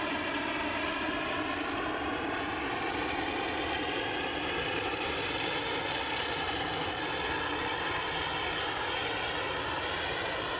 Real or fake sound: real